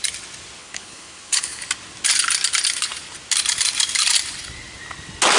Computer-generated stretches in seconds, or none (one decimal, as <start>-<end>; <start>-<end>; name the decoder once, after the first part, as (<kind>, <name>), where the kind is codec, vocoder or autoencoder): 0.6-1.6 (codec, HILCodec)